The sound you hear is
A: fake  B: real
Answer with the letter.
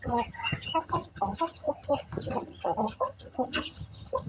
A